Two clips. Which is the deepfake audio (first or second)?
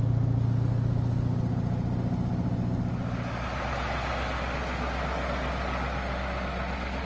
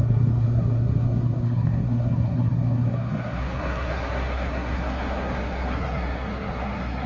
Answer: second